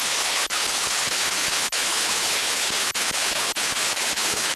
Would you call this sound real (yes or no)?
no